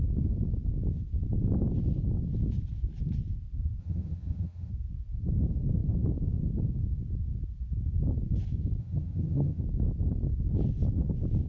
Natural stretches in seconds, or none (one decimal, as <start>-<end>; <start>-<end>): 0.0-3.8; 4.7-8.8; 9.6-11.5